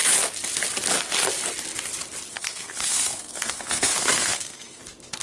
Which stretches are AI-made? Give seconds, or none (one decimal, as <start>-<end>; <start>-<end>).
2.3-4.8